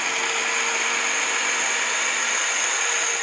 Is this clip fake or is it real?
real